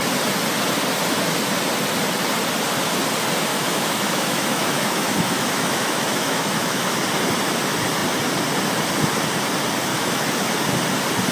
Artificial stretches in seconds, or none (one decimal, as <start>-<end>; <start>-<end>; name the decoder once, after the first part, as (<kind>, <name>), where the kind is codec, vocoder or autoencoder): 3.5-7.0 (autoencoder, DAC-VAE); 9.9-10.5